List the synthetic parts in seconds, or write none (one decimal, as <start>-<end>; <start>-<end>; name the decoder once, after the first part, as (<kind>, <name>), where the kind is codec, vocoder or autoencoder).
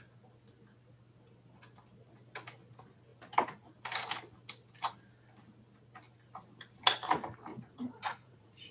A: 7.5-8.7 (vocoder, Vocos)